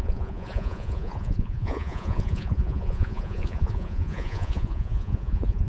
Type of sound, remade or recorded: remade